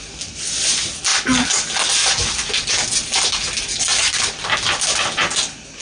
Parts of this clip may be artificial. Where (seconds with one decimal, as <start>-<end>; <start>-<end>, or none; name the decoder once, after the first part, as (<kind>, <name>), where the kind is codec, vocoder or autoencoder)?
3.9-4.6 (vocoder, BigVGAN v2)